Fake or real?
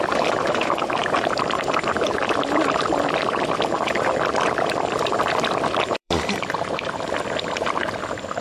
fake